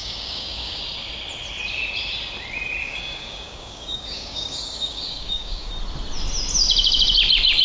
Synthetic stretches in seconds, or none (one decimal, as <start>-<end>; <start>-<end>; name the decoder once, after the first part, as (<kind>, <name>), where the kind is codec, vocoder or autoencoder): 0.0-0.8 (codec, DAC); 2.8-5.7